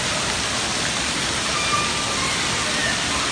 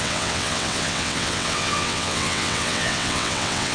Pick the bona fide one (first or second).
first